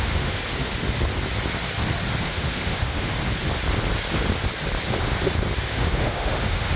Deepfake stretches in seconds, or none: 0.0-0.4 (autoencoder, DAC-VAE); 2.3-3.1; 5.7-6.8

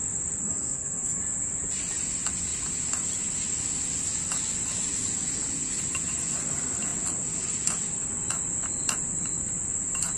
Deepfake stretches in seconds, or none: 0.4-1.2 (codec, SNAC)

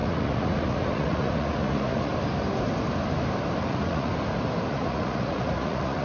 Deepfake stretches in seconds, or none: 0.0-2.1 (vocoder, Vocos); 3.6-4.1; 4.7-6.0

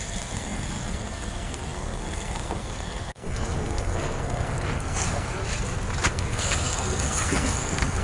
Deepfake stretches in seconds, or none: 0.0-5.4 (codec, SNAC); 6.1-8.0

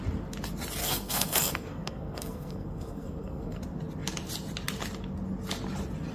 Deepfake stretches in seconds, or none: 0.8-3.6 (codec, SNAC)